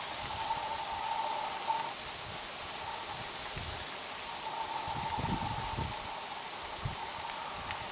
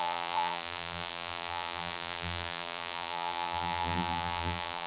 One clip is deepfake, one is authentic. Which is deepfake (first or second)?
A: second